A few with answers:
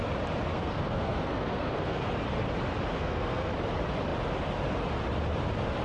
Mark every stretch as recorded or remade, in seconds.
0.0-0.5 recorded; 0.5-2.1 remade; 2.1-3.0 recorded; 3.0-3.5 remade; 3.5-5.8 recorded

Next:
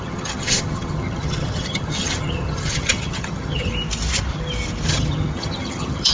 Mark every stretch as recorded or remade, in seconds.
0.0-3.7 remade; 3.7-4.9 recorded; 4.9-6.1 remade

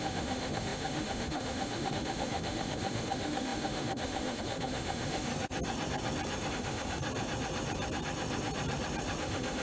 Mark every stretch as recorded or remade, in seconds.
0.0-5.3 remade; 5.3-6.5 recorded; 6.5-7.0 remade; 7.0-9.2 recorded; 9.2-9.6 remade